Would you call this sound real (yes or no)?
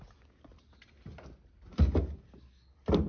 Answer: yes